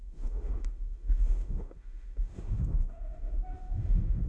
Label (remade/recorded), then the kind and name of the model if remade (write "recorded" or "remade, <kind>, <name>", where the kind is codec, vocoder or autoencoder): remade, autoencoder, DAC-VAE